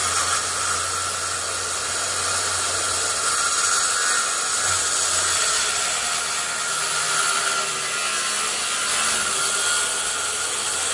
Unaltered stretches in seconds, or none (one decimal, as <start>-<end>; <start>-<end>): 0.0-10.9